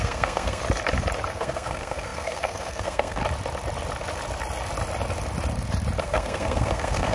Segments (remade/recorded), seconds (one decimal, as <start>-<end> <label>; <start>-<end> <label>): 0.0-0.6 remade; 0.6-1.3 recorded; 1.3-3.2 remade; 3.2-6.0 recorded; 6.0-7.1 remade